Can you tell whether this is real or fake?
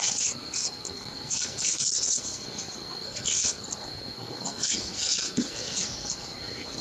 fake